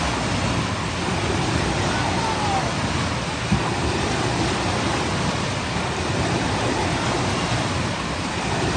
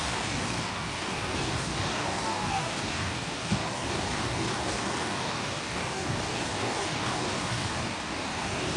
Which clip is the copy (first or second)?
second